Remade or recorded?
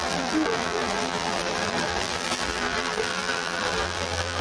remade